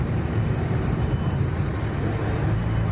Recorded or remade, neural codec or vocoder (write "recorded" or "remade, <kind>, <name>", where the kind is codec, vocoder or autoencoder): recorded